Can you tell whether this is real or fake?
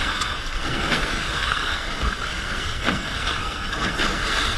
fake